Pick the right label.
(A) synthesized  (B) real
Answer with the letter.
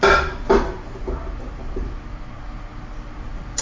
B